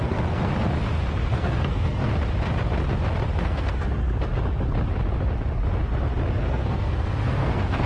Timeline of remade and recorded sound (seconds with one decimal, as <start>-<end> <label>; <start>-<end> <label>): 0.0-0.5 remade; 0.5-1.3 recorded; 1.3-2.1 remade; 2.1-3.4 recorded; 3.4-4.0 remade; 4.0-6.3 recorded; 6.3-7.9 remade